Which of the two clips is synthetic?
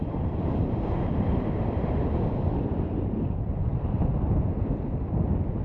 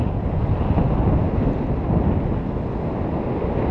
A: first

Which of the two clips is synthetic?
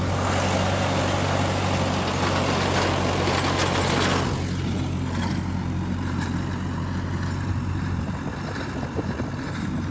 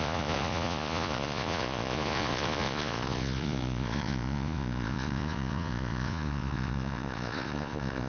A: second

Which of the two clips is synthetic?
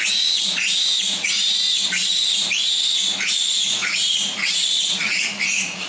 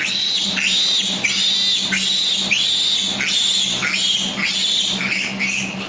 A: first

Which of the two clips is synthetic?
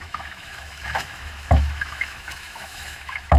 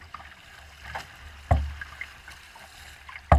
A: first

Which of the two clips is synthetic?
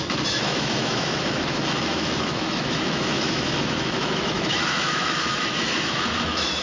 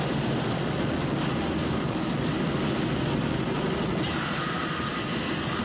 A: first